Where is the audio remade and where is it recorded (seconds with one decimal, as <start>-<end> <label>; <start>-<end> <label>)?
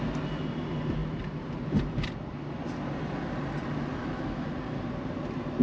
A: 0.0-4.0 recorded; 4.0-4.5 remade; 4.5-5.6 recorded